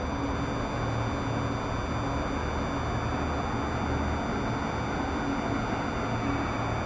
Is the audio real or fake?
real